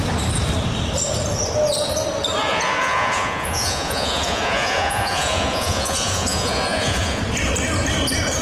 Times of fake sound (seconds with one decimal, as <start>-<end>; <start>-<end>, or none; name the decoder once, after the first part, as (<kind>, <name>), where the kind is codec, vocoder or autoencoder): 2.4-7.2 (vocoder, Vocos)